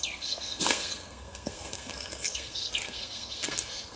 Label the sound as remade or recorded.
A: remade